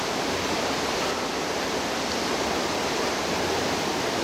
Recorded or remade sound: recorded